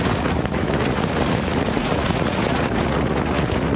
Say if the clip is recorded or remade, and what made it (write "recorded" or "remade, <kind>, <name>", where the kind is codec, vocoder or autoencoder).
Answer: remade, vocoder, Vocos